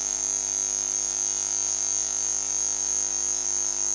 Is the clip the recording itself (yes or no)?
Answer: no